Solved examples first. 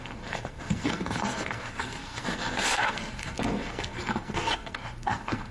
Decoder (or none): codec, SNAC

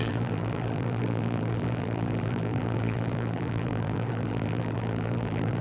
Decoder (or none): vocoder, BigVGAN v2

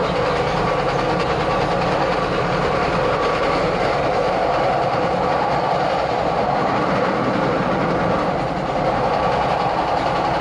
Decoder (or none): none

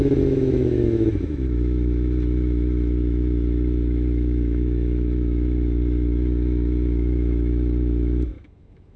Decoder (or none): autoencoder, DAC-VAE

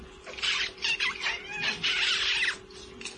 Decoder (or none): none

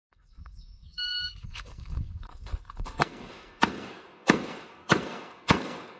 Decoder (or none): codec, SNAC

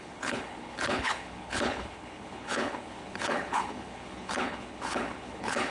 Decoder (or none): codec, HILCodec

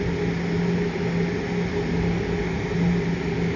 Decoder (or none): none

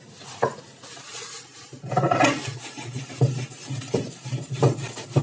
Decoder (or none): none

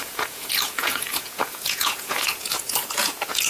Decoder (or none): vocoder, Vocos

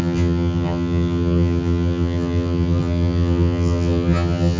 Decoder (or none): vocoder, HiFi-GAN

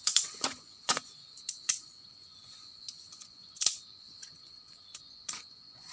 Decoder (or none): vocoder, Vocos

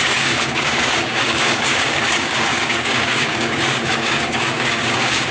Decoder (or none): codec, DAC